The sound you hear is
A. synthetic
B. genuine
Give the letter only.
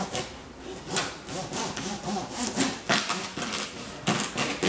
B